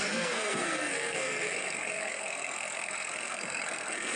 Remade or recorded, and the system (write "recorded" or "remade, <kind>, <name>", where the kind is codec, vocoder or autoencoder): remade, codec, SNAC